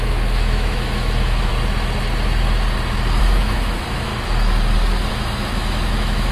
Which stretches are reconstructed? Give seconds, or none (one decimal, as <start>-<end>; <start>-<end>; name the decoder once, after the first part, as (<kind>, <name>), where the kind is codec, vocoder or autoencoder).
0.0-1.5 (autoencoder, DAC-VAE); 3.2-4.1; 5.1-6.3